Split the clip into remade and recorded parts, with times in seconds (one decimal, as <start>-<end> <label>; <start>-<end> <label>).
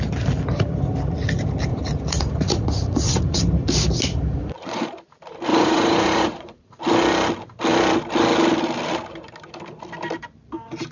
0.0-1.7 recorded; 1.7-3.4 remade; 3.4-4.3 recorded; 4.3-4.9 remade; 4.9-5.5 recorded; 5.5-6.8 remade; 6.8-10.9 recorded